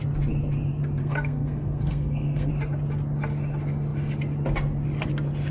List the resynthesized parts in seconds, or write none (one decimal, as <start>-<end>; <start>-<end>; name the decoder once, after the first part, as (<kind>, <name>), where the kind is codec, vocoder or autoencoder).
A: 1.0-2.5 (codec, SNAC)